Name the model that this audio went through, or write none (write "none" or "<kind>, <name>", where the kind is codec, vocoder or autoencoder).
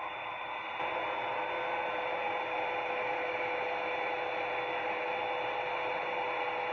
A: none